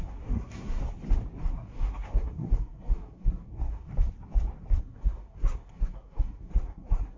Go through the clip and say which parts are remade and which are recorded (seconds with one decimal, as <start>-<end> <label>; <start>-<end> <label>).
0.0-0.8 remade; 0.8-1.4 recorded; 1.4-3.9 remade; 3.9-4.8 recorded; 4.8-7.2 remade